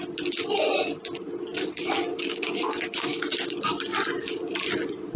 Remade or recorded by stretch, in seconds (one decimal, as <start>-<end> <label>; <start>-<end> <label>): 0.0-2.1 recorded; 2.1-3.7 remade; 3.7-5.2 recorded